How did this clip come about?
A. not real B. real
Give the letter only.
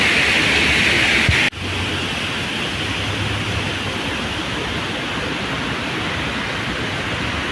B